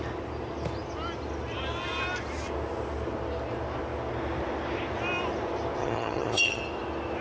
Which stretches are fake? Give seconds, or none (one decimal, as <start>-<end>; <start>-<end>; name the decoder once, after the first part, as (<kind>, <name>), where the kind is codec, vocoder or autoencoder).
5.8-6.6 (vocoder, HiFi-GAN)